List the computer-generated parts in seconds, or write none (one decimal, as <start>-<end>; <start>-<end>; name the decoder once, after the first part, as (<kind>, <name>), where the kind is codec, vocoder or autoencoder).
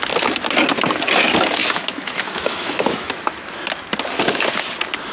1.6-3.3 (autoencoder, DAC-VAE)